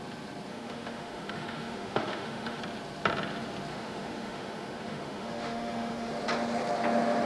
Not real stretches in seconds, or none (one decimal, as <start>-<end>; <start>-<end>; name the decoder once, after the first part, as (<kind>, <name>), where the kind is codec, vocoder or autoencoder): 0.5-2.6 (autoencoder, DAC-VAE); 3.7-6.1